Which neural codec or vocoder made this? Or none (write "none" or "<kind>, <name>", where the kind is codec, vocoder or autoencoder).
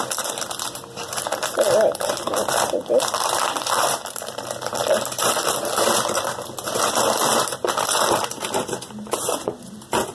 vocoder, BigVGAN v2